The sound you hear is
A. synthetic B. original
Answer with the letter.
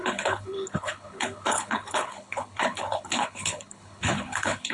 A